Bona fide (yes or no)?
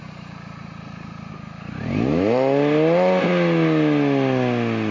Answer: yes